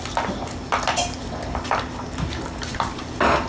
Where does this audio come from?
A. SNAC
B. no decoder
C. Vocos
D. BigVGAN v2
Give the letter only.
B